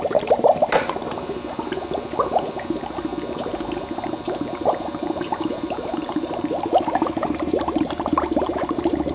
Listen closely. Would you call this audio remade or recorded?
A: remade